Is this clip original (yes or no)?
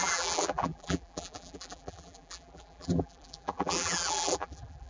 no